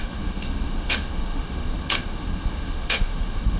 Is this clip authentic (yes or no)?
no